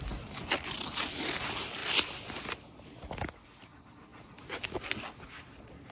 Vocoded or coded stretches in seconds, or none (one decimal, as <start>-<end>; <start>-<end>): none